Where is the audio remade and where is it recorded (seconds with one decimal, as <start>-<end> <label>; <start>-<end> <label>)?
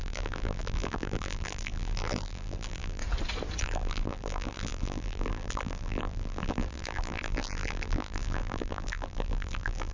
0.0-3.0 remade; 3.0-3.6 recorded; 3.6-9.9 remade